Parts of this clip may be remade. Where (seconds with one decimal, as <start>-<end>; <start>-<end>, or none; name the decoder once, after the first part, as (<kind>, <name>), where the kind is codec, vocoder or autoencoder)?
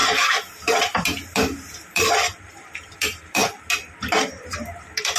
0.0-3.4 (vocoder, BigVGAN v2); 4.3-5.2